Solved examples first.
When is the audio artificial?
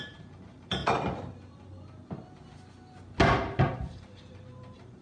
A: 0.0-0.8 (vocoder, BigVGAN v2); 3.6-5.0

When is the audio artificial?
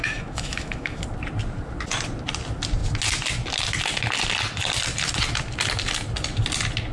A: 0.0-1.0 (autoencoder, DAC-VAE)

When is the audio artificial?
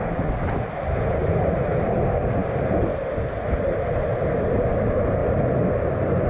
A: none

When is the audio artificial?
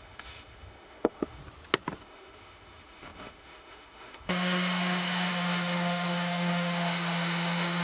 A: 0.0-1.4 (autoencoder, DAC-VAE); 2.0-7.8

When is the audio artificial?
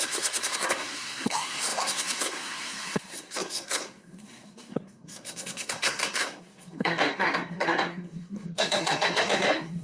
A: 0.0-9.8 (codec, SNAC)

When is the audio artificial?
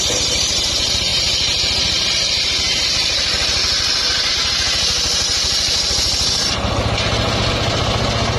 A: none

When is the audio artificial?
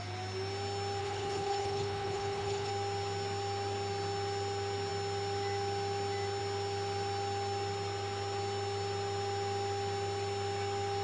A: 1.0-2.7 (codec, HILCodec)